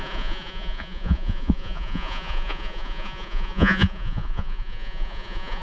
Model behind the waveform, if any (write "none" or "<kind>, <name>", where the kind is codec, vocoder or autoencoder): vocoder, Vocos